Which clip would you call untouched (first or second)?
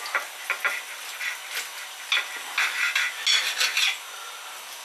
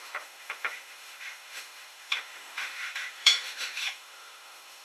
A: first